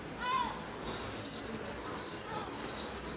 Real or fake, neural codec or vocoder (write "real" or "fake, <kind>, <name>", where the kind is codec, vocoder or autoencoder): real